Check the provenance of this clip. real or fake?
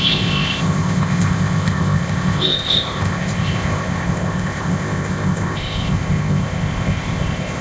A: fake